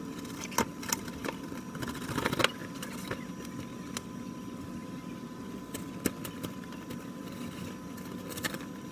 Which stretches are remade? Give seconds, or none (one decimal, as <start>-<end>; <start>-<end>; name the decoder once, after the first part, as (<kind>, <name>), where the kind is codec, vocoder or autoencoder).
none

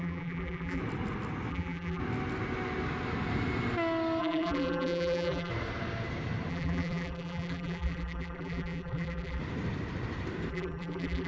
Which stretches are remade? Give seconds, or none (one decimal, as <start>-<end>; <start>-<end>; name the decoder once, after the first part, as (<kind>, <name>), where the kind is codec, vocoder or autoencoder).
0.0-0.8 (vocoder, BigVGAN v2); 1.5-2.0; 4.2-5.5; 6.5-9.4; 10.5-11.3

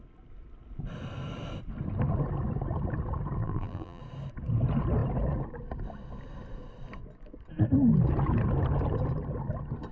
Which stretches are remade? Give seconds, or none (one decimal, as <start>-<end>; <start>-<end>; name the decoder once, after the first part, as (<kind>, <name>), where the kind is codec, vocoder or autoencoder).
3.4-4.0 (vocoder, BigVGAN v2)

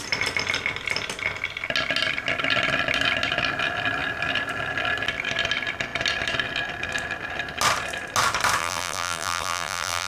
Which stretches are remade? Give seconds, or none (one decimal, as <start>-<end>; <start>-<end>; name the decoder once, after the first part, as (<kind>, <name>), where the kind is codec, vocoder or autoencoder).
8.6-10.1 (vocoder, BigVGAN v2)

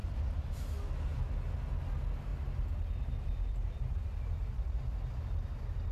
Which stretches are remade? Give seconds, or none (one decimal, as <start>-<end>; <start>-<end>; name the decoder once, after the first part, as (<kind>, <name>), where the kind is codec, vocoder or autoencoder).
0.0-0.5 (vocoder, BigVGAN v2); 2.3-4.8